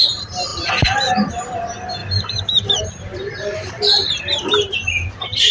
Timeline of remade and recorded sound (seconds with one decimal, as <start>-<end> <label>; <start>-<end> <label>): 0.0-0.5 recorded; 0.5-1.3 remade; 1.3-2.0 recorded; 2.0-5.5 remade